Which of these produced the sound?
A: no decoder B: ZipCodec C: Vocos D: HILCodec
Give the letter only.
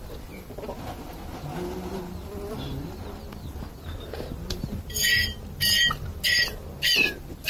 A